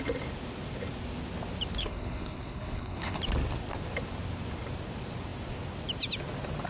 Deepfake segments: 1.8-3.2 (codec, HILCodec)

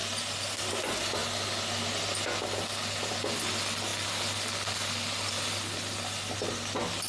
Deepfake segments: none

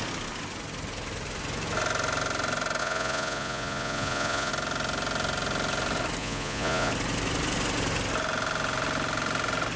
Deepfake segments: 2.8-4.5 (vocoder, Vocos); 6.2-6.9

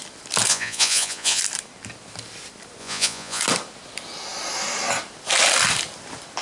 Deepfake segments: 0.5-1.4 (vocoder, Vocos); 2.8-3.4